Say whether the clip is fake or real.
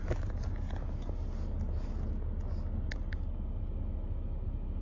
real